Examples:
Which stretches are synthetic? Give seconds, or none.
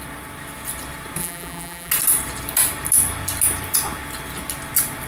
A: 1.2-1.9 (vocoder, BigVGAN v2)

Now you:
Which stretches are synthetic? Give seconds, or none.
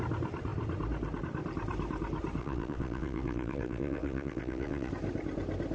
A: 2.4-4.9 (vocoder, WaveNeXt)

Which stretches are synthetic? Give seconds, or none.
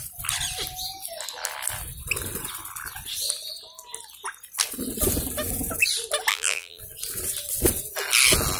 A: 6.3-6.8 (vocoder, BigVGAN v2)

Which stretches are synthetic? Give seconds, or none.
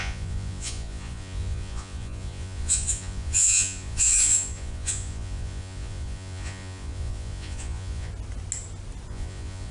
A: 0.0-8.1 (vocoder, Vocos); 9.1-9.7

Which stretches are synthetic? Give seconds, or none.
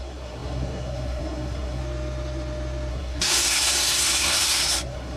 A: 0.0-1.8 (codec, SNAC); 2.9-5.2